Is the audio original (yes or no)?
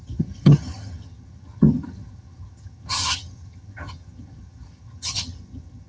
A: no